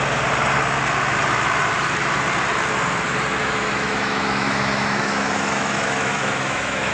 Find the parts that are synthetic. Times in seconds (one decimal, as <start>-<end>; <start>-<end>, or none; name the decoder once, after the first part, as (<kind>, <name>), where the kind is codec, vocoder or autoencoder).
3.4-6.9 (autoencoder, DAC-VAE)